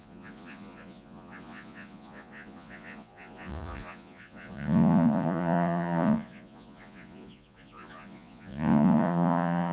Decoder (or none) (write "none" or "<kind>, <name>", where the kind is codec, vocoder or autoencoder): vocoder, Vocos